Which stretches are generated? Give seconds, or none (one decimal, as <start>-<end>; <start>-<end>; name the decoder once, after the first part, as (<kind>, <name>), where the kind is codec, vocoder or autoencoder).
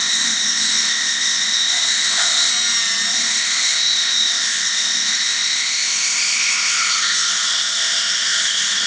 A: 0.0-2.5 (codec, ZipCodec); 3.1-8.9